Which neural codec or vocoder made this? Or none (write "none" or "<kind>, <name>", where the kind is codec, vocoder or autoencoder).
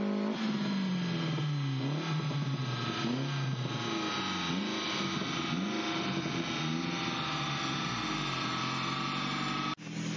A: none